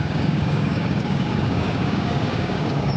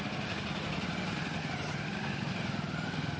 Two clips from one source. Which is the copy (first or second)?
first